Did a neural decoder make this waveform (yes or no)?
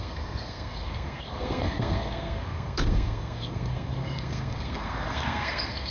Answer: yes